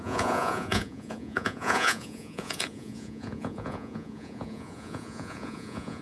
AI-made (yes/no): yes